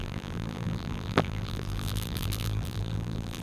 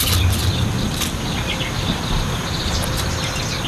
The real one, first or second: second